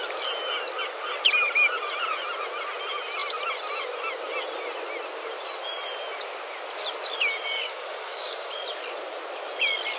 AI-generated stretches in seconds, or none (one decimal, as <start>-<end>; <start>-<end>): 7.7-8.5